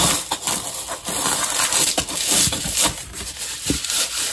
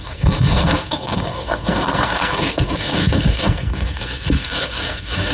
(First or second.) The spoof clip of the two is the second